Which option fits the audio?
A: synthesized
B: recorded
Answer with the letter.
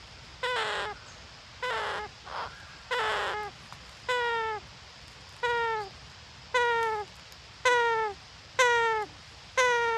B